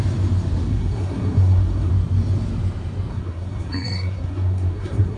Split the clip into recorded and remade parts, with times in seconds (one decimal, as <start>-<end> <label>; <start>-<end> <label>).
0.0-0.7 recorded; 0.7-1.9 remade; 1.9-3.1 recorded; 3.1-5.2 remade

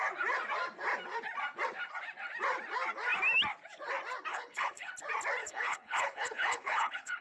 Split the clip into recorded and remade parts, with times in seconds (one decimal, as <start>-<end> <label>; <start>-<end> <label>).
0.0-4.3 recorded; 4.3-4.9 remade; 4.9-5.4 recorded; 5.4-7.2 remade

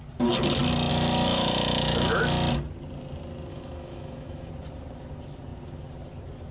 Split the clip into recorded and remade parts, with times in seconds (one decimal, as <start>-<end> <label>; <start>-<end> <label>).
0.0-0.9 recorded; 0.9-2.2 remade; 2.2-3.5 recorded; 3.5-4.5 remade; 4.5-6.5 recorded